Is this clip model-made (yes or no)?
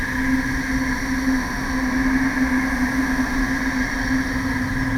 no